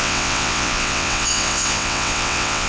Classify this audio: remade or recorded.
remade